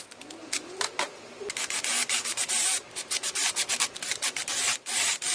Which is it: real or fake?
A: real